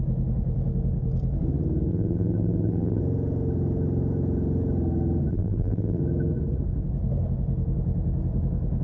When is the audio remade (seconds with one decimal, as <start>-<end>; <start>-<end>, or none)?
1.9-3.0; 5.3-6.0